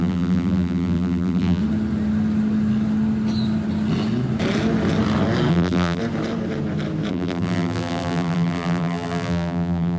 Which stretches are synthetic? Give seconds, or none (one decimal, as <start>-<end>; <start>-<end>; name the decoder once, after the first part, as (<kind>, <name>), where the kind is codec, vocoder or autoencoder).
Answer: 0.0-1.6 (vocoder, BigVGAN v2); 5.5-6.0; 7.1-10.0